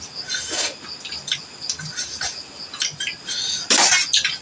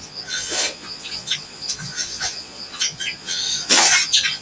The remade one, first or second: second